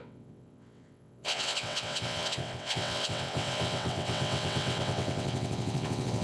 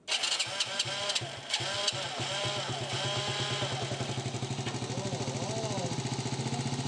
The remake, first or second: first